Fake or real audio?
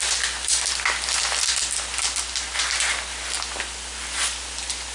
real